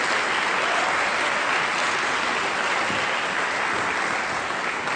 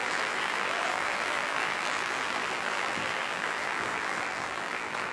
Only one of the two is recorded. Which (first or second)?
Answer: first